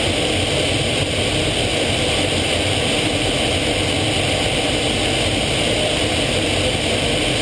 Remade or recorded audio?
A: recorded